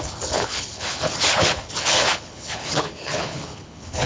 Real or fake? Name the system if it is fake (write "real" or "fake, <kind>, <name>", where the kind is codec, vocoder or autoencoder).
fake, codec, HILCodec